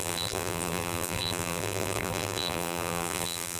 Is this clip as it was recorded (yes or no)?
no